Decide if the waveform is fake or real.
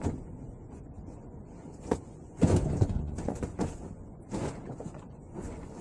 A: fake